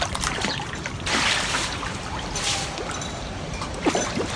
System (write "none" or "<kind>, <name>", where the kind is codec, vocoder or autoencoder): vocoder, BigVGAN v2